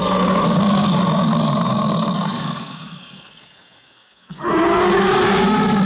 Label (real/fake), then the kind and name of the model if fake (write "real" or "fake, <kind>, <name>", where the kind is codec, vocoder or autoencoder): real